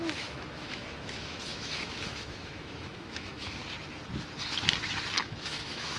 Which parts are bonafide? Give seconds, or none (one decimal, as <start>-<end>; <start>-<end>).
3.6-5.2